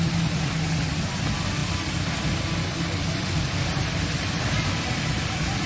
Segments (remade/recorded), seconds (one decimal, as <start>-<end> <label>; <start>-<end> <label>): 0.0-5.7 recorded